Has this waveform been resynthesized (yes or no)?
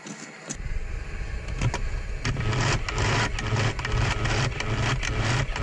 no